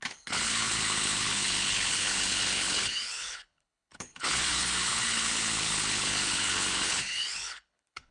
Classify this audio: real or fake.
fake